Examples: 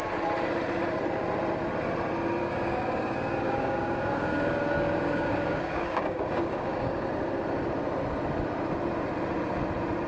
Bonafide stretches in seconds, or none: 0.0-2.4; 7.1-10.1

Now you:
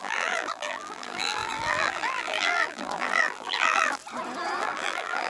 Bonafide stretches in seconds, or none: 4.0-4.6

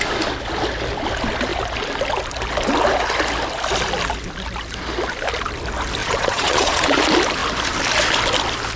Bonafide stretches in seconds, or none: 0.0-6.0; 7.0-8.8

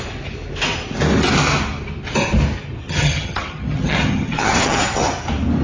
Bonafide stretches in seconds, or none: 0.0-2.8; 5.1-5.6